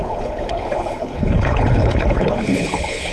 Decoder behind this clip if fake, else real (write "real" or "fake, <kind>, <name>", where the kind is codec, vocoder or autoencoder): fake, codec, HILCodec